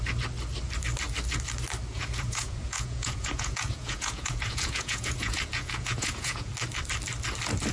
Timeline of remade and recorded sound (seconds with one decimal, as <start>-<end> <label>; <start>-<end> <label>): 0.0-1.9 recorded; 1.9-6.5 remade; 6.5-7.7 recorded